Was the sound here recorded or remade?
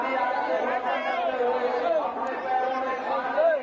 recorded